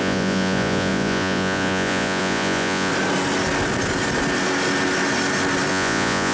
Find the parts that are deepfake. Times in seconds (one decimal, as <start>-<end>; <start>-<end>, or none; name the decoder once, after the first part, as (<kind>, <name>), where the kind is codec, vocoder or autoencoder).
0.0-2.9 (vocoder, Vocos); 5.7-6.3